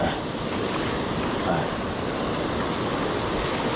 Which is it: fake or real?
real